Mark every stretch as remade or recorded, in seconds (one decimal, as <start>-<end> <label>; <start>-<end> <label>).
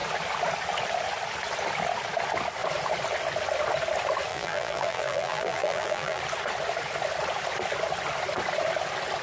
0.0-4.3 recorded; 4.3-6.2 remade; 6.2-9.2 recorded